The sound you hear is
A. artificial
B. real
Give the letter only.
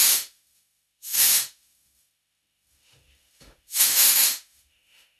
A